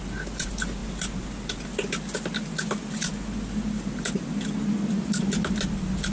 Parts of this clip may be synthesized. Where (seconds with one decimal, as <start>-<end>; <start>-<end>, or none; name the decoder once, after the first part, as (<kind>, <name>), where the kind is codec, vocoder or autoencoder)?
none